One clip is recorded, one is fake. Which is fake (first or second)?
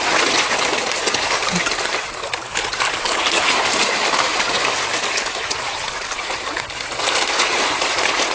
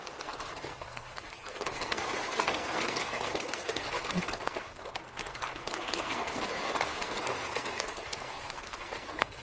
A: second